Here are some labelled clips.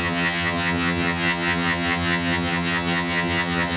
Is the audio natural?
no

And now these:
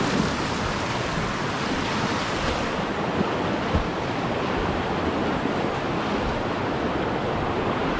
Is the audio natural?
yes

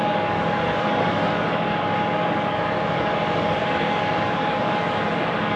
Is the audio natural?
no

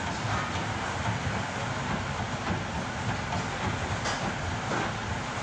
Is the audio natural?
yes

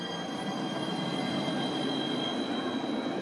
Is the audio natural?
yes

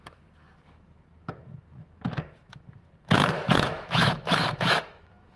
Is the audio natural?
no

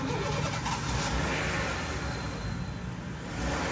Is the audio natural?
yes